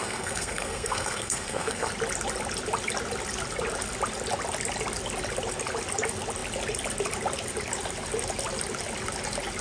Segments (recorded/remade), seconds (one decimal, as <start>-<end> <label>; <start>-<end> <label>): 0.0-1.9 remade; 1.9-9.6 recorded